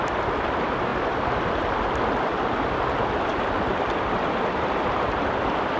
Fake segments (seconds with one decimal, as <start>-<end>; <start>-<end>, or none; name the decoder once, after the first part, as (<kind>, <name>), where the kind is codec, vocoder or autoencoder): none